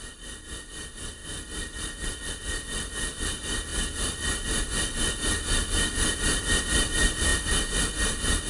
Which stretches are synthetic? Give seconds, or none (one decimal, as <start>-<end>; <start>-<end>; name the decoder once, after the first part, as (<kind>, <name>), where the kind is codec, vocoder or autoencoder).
none

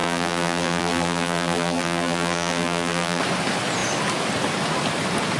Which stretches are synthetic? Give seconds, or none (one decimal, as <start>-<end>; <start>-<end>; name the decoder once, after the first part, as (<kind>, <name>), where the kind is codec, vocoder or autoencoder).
0.0-3.2 (vocoder, BigVGAN v2)

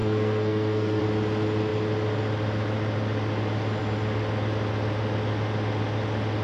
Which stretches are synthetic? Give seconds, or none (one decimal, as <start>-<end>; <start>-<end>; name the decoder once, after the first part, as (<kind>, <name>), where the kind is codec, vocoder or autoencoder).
0.0-1.0 (codec, SNAC)

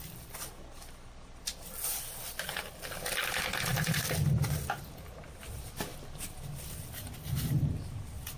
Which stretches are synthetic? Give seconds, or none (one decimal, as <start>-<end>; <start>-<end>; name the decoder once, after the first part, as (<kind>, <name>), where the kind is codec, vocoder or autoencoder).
none

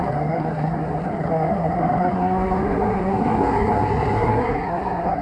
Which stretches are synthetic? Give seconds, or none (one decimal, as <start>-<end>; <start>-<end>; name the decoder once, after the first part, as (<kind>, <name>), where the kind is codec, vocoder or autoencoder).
0.0-5.2 (codec, SNAC)

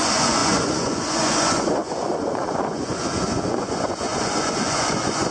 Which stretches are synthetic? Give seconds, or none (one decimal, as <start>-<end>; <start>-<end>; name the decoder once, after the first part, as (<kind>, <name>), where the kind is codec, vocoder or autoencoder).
0.0-5.3 (vocoder, Vocos)